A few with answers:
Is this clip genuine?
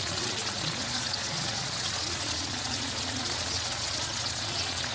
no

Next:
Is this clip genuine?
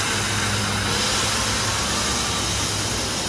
yes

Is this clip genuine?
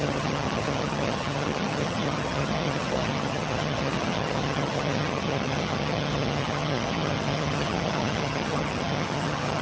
no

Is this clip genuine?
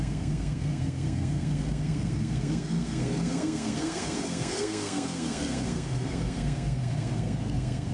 no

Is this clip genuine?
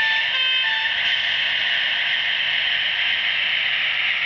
yes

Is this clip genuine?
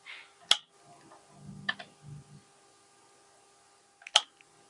yes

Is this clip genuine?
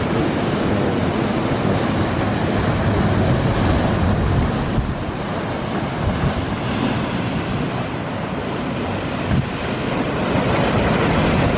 yes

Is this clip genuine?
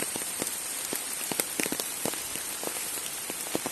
no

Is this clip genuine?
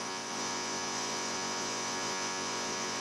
no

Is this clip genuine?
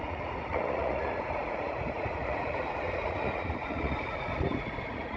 no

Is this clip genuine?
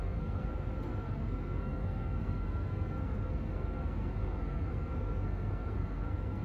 no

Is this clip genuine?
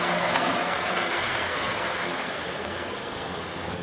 no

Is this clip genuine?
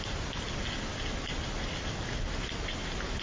yes